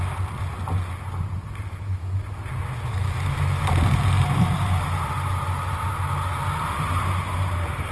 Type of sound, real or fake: real